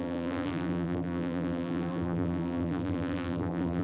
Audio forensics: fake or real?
fake